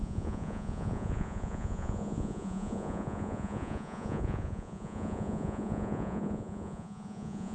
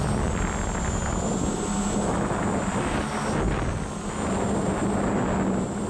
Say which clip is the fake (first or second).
first